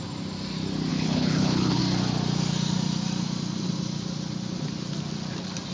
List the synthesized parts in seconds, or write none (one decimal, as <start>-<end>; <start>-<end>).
0.9-1.8